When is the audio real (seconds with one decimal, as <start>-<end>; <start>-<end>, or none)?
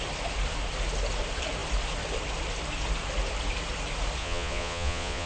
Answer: 0.0-4.2